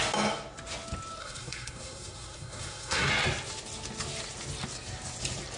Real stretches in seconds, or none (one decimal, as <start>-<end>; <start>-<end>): 0.0-1.2; 3.1-5.6